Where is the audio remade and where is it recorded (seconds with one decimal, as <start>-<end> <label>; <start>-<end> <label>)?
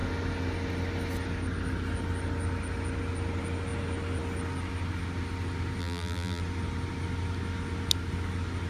0.0-5.8 recorded; 5.8-6.4 remade; 6.4-8.7 recorded